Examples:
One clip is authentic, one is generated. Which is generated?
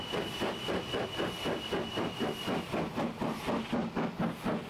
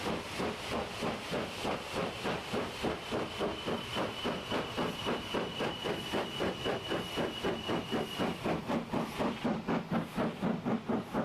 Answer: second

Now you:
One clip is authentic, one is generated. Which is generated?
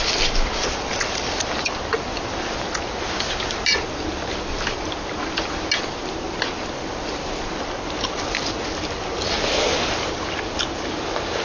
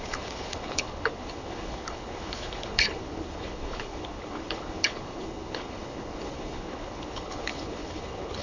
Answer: second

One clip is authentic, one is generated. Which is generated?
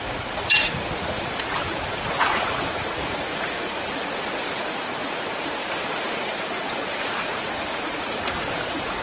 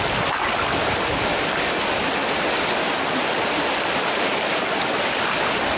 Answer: first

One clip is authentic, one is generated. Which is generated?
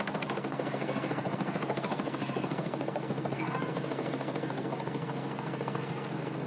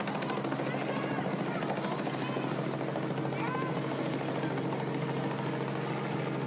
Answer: first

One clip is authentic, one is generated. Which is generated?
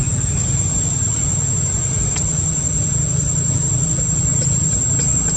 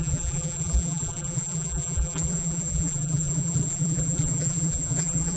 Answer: second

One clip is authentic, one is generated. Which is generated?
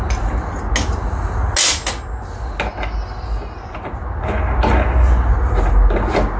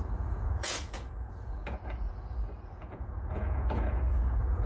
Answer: second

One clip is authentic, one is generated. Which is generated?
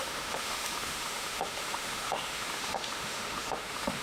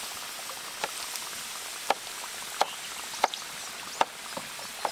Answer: first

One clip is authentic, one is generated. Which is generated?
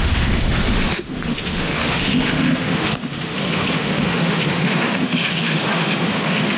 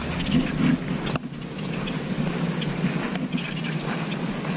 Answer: first